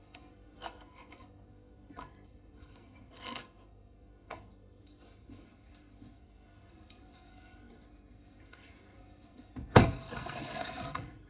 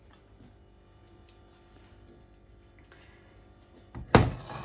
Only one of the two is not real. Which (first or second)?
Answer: first